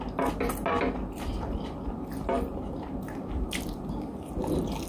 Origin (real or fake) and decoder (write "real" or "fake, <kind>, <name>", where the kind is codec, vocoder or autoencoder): real